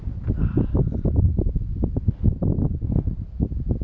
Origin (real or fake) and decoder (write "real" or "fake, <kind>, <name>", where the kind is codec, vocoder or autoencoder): real